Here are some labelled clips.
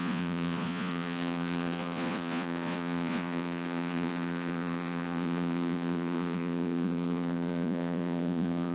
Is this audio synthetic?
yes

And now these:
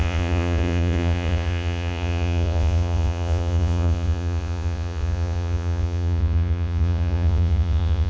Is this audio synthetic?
yes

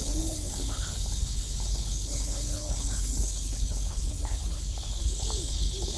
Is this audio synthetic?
yes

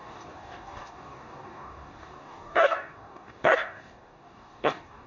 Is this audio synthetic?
yes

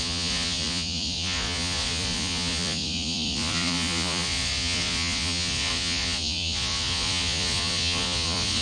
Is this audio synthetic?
yes